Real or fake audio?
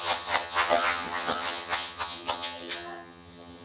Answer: fake